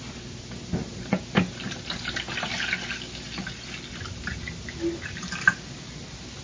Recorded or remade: recorded